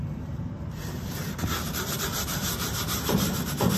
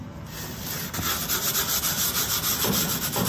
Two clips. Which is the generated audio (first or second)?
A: first